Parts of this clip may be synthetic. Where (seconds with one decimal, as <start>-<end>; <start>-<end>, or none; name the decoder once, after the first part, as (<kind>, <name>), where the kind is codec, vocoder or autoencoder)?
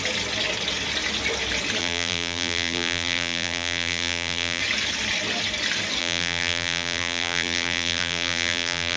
1.8-4.6 (vocoder, BigVGAN v2); 6.0-9.0